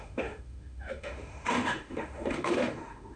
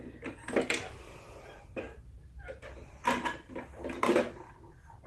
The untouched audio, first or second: second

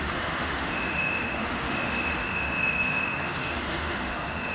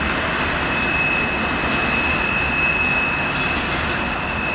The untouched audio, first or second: second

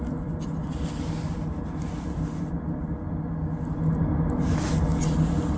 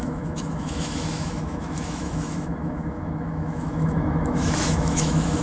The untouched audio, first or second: first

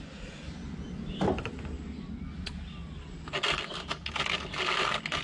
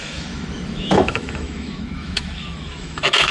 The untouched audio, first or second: first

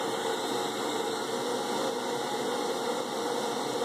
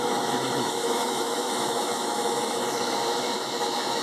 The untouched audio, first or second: first